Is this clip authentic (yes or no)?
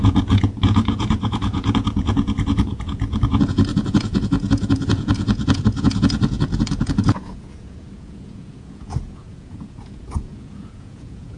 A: no